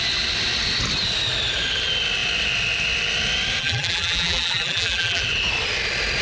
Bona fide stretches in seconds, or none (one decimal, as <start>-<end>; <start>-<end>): 0.0-3.6; 5.2-6.2